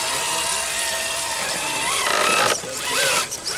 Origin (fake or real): real